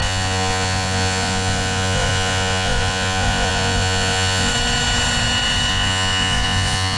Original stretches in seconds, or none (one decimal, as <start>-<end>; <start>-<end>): 4.5-5.7